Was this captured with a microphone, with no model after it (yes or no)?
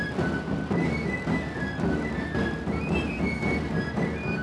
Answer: yes